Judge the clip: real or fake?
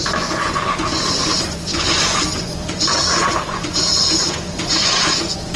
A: fake